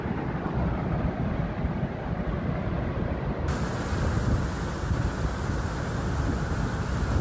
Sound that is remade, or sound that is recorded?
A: recorded